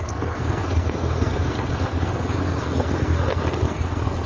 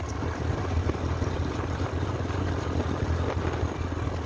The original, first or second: second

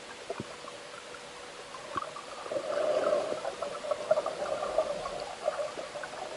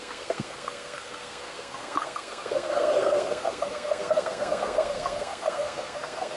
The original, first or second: first